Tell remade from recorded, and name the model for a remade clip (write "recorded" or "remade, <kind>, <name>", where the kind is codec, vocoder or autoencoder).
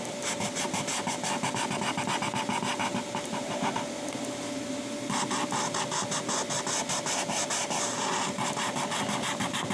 recorded